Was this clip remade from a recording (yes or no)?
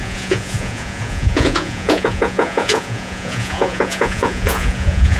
yes